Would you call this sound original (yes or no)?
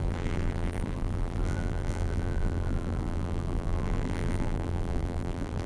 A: no